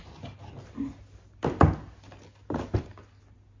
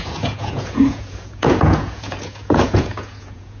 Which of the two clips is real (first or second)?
first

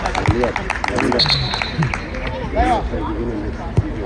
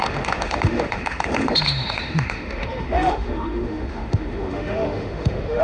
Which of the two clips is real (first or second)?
first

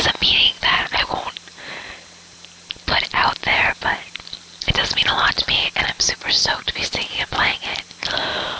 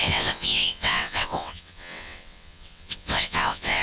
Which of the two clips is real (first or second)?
first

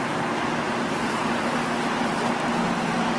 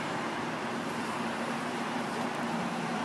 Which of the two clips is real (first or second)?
first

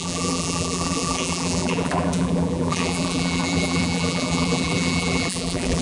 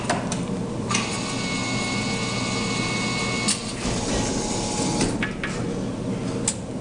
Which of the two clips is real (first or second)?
second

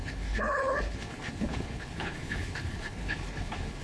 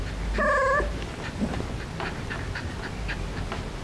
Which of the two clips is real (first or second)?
second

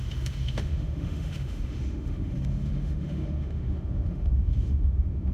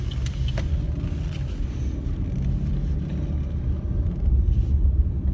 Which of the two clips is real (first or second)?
second